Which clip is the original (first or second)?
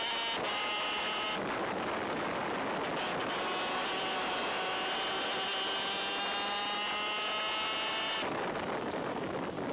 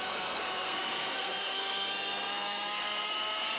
first